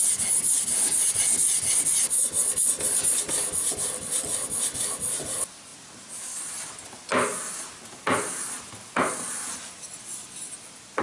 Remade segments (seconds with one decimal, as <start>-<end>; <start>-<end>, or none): none